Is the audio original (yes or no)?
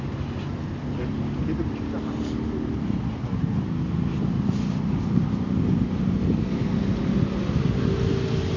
yes